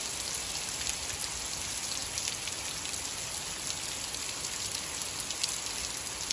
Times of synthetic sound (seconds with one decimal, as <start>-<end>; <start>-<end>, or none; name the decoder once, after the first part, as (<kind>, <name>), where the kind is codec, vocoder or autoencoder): none